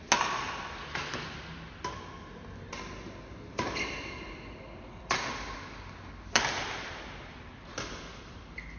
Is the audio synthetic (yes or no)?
no